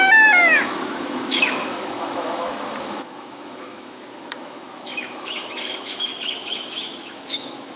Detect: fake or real fake